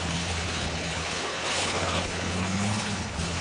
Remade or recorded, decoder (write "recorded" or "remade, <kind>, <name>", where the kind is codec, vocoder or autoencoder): remade, codec, HILCodec